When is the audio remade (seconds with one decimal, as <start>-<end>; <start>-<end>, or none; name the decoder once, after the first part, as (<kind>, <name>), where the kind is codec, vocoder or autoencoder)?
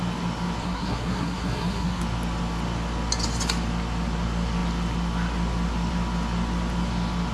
0.6-2.0 (codec, SNAC)